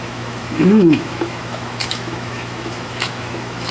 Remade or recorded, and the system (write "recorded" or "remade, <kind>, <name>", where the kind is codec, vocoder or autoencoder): remade, autoencoder, DAC-VAE